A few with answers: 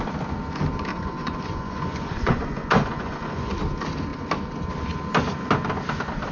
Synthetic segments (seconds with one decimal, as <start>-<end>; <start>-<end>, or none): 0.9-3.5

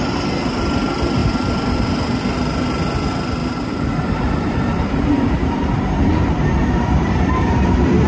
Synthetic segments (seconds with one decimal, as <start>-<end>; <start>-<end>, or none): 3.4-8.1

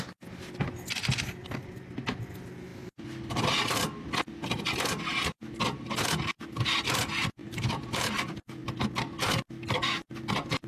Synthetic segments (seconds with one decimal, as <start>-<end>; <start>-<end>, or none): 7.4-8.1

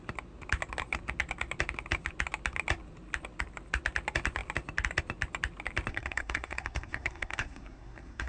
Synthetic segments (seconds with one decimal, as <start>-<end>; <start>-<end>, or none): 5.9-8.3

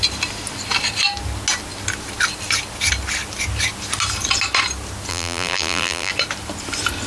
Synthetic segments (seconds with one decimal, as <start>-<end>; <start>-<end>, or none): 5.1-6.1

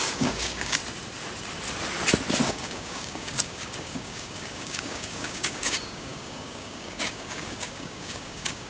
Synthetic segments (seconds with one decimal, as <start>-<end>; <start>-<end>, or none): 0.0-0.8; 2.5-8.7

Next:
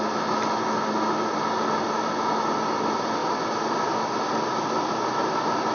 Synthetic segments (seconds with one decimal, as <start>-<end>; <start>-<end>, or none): none

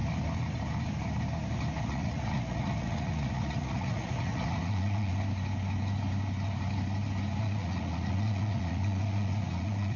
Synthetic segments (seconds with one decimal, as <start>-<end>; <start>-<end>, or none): 1.8-5.1; 7.4-10.0